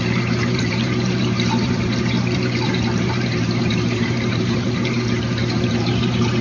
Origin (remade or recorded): remade